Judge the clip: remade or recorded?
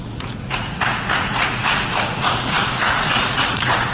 remade